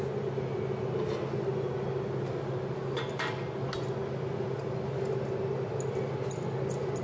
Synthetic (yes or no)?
no